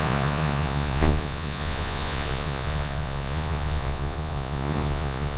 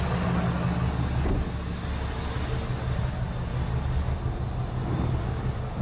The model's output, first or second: first